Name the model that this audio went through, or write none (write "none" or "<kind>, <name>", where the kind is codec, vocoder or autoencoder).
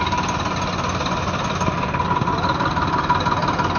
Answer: none